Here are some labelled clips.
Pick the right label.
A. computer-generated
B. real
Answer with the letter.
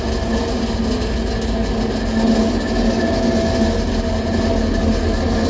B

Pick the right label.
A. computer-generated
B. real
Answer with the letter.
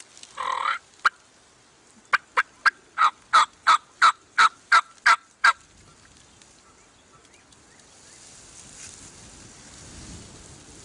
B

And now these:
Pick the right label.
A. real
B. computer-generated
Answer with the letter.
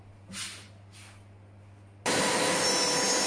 A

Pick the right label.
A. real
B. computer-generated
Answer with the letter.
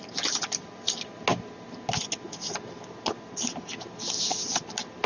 A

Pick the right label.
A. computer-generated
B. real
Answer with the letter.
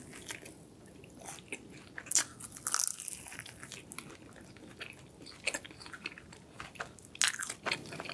B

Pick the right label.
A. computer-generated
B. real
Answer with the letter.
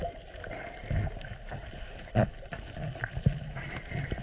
A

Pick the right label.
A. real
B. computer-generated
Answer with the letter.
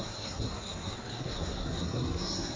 B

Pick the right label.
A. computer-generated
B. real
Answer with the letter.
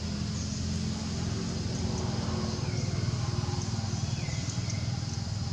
B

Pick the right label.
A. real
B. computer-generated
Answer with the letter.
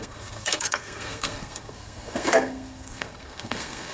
B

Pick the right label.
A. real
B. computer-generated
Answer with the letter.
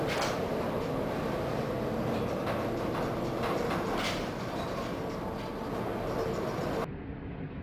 A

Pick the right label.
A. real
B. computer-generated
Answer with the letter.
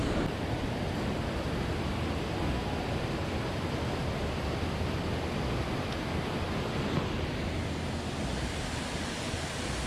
A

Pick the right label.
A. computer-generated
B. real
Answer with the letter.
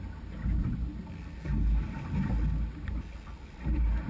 B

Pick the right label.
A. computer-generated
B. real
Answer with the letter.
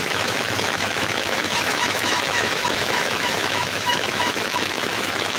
A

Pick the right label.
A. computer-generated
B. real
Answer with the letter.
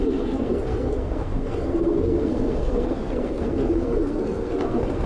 A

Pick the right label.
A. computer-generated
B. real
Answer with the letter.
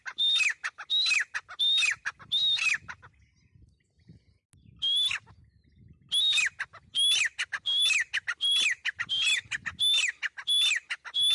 B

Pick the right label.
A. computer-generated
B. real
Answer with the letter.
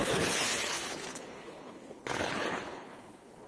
A